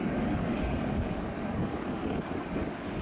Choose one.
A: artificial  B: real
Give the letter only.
A